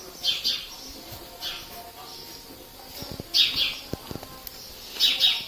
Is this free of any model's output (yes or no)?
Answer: yes